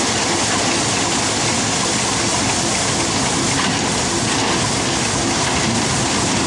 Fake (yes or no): no